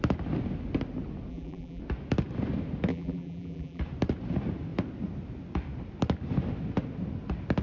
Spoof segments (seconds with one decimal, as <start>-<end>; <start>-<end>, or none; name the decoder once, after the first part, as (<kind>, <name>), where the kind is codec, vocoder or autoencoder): 1.3-1.8 (vocoder, BigVGAN v2); 2.9-3.8